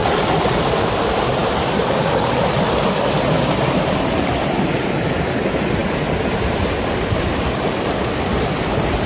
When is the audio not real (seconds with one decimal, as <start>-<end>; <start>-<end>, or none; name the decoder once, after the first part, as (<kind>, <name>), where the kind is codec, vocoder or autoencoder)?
none